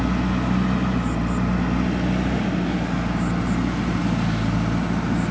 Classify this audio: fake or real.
real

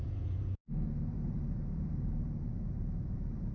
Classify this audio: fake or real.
fake